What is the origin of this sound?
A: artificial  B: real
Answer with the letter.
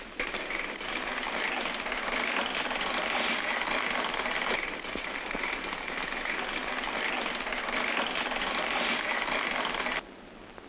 B